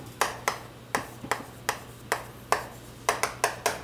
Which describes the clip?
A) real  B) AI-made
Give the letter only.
A